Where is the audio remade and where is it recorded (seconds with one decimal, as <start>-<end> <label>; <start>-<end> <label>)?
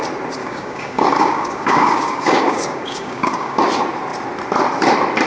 0.0-0.4 recorded; 0.4-3.6 remade; 3.6-5.3 recorded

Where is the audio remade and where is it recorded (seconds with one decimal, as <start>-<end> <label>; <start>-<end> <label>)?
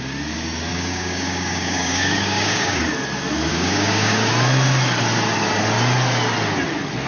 0.0-0.7 recorded; 0.7-2.8 remade; 2.8-3.5 recorded; 3.5-4.3 remade; 4.3-7.1 recorded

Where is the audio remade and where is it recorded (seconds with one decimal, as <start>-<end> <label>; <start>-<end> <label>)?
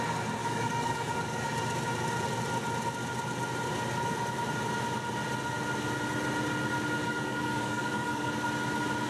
0.0-0.4 recorded; 0.4-1.5 remade; 1.5-7.0 recorded; 7.0-8.3 remade; 8.3-9.1 recorded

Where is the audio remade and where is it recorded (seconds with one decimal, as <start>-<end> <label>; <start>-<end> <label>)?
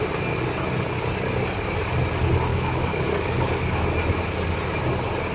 0.0-2.5 recorded; 2.5-3.9 remade; 3.9-5.3 recorded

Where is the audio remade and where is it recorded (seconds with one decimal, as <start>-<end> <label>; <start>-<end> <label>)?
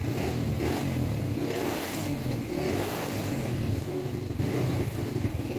0.0-0.5 remade; 0.5-1.2 recorded; 1.2-5.6 remade